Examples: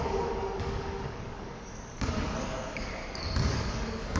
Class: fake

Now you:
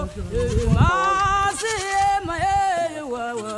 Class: real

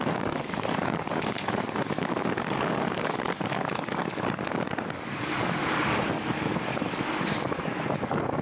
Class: fake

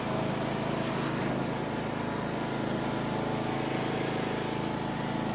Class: real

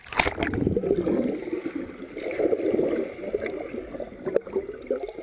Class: real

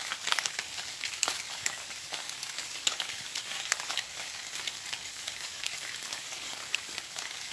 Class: fake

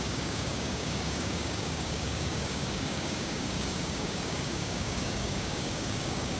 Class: fake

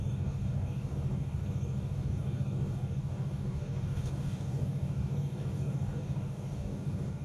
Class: fake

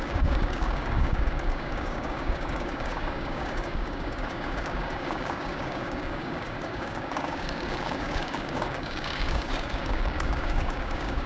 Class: fake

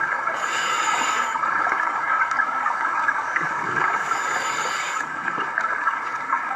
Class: fake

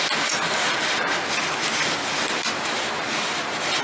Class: real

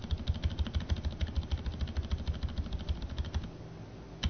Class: real